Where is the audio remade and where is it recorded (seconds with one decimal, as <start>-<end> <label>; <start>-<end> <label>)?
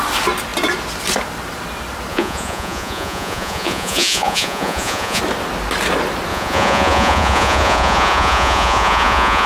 0.0-2.1 recorded; 2.1-5.2 remade; 5.2-6.3 recorded; 6.3-9.5 remade